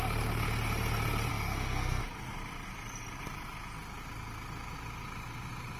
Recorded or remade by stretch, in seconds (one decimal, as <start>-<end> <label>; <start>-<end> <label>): 0.0-1.3 recorded; 1.3-2.0 remade; 2.0-5.8 recorded